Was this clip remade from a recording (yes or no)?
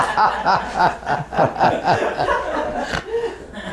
no